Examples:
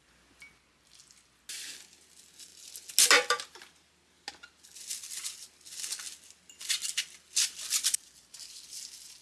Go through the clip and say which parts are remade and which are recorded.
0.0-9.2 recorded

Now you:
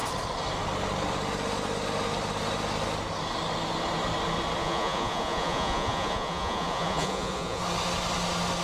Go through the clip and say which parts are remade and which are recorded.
0.0-4.6 recorded; 4.6-7.6 remade; 7.6-8.6 recorded

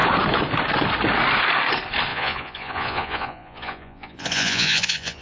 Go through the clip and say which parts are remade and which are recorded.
0.0-2.1 recorded; 2.1-5.2 remade

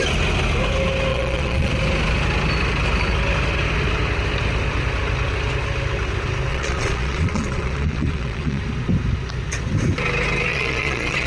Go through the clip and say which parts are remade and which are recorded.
0.0-1.1 recorded; 1.1-1.7 remade; 1.7-6.5 recorded; 6.5-8.6 remade; 8.6-10.5 recorded; 10.5-11.3 remade